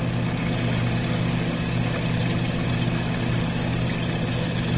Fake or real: real